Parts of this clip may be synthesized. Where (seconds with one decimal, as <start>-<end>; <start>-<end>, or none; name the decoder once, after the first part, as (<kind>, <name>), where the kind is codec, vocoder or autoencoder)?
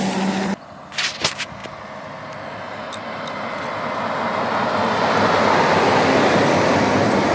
none